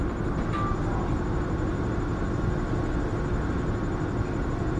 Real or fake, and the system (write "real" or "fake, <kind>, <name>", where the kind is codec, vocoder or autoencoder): real